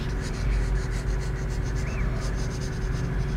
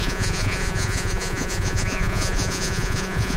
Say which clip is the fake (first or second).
second